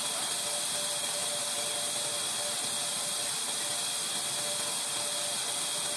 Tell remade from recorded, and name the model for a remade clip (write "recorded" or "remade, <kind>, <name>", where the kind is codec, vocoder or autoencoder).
recorded